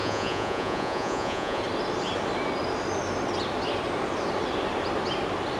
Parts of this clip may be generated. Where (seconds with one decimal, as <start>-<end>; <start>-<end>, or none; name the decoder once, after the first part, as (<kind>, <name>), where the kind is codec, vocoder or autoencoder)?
0.0-1.6 (vocoder, Vocos)